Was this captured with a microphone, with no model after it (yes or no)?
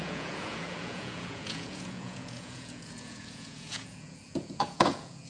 no